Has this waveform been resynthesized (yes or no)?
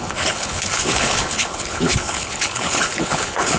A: yes